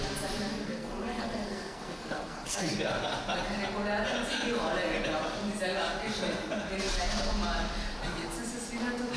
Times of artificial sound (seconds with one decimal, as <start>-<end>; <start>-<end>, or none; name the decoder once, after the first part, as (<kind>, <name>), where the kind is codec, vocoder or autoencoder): 0.5-2.7 (codec, SNAC)